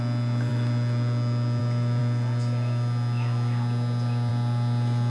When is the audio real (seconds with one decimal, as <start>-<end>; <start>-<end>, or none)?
0.0-5.1